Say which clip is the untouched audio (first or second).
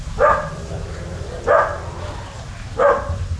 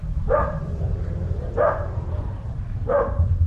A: first